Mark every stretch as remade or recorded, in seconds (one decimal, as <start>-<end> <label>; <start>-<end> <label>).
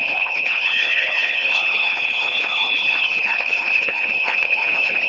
0.0-5.1 remade